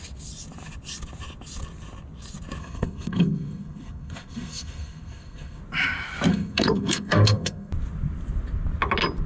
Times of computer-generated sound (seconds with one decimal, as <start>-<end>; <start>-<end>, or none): 2.6-5.6; 6.3-7.7